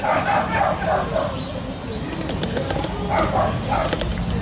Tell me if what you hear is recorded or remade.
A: recorded